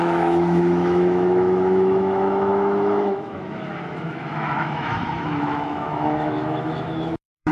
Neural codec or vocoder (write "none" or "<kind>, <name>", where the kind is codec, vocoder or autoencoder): autoencoder, DAC-VAE